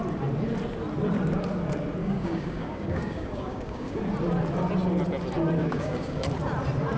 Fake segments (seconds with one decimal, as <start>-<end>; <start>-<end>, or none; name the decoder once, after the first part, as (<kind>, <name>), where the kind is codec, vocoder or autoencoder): 2.0-4.0 (codec, DAC); 5.6-6.2